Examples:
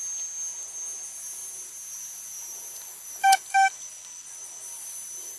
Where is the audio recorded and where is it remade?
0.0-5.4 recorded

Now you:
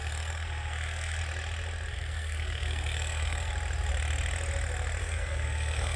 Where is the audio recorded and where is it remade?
0.0-1.2 remade; 1.2-1.9 recorded; 1.9-3.5 remade; 3.5-5.0 recorded; 5.0-6.0 remade

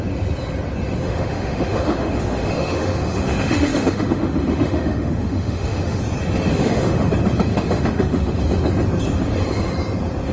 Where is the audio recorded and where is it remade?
0.0-1.0 recorded; 1.0-6.0 remade; 6.0-6.5 recorded; 6.5-7.1 remade; 7.1-7.5 recorded; 7.5-8.4 remade; 8.4-10.3 recorded

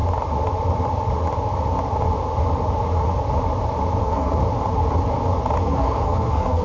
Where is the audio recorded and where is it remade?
0.0-4.0 recorded; 4.0-4.4 remade; 4.4-5.6 recorded; 5.6-6.6 remade

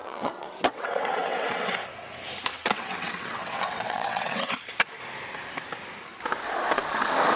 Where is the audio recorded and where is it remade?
0.0-1.7 remade; 1.7-2.5 recorded; 2.5-4.5 remade; 4.5-7.4 recorded